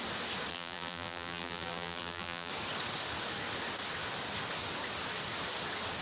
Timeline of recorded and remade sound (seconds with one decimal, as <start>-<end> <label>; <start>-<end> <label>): 0.0-0.5 recorded; 0.5-2.5 remade; 2.5-6.0 recorded